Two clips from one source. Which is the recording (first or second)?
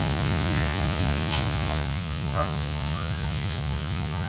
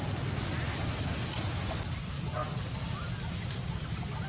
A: second